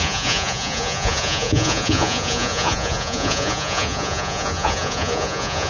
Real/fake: fake